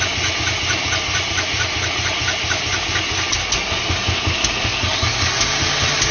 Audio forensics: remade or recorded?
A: recorded